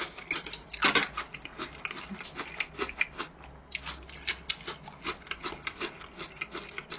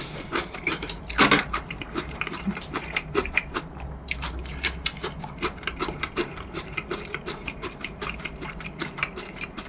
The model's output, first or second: second